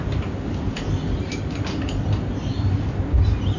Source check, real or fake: real